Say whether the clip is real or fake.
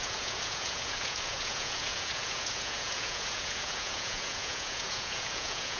fake